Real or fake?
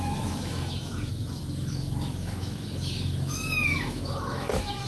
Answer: fake